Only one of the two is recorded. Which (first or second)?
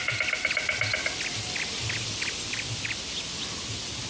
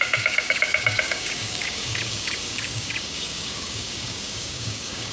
first